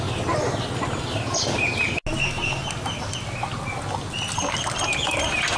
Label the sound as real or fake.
real